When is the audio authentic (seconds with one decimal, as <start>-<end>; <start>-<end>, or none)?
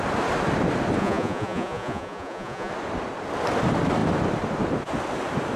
0.0-1.0; 2.7-5.6